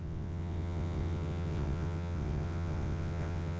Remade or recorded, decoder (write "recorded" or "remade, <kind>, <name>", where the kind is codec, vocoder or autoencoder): remade, vocoder, WaveNeXt